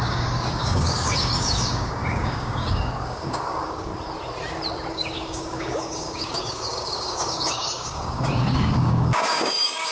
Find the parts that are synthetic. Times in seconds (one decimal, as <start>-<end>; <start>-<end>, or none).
0.0-3.9; 4.9-9.9